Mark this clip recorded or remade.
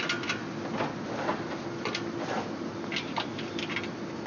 recorded